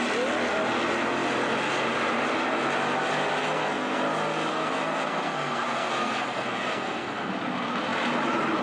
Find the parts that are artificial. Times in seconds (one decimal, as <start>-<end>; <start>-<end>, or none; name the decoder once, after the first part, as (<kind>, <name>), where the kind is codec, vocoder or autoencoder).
3.4-4.0 (codec, SNAC); 4.5-7.3